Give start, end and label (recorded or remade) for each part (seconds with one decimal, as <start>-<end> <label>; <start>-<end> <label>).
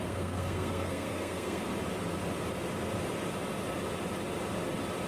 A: 0.0-1.7 remade; 1.7-5.1 recorded